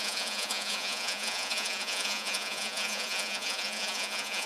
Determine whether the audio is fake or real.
fake